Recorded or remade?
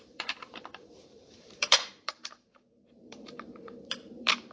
remade